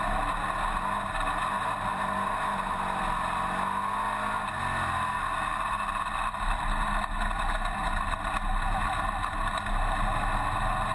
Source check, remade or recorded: recorded